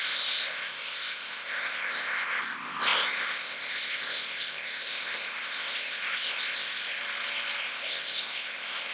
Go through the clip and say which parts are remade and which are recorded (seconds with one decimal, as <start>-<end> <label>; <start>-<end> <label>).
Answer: 0.0-7.0 remade; 7.0-7.6 recorded; 7.6-8.9 remade